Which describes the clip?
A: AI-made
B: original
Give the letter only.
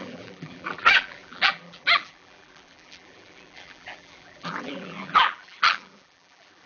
A